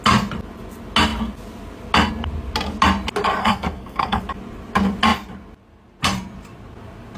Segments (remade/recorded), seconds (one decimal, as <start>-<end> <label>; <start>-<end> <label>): 0.0-3.4 recorded; 3.4-4.2 remade; 4.2-7.2 recorded